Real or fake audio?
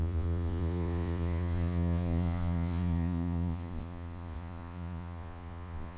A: fake